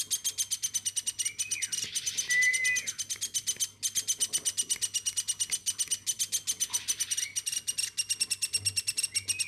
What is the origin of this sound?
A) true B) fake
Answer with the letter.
A